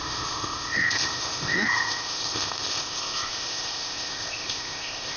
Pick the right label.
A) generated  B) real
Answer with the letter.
A